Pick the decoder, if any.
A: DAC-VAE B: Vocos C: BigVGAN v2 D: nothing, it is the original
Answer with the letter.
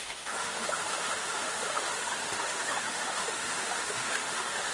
A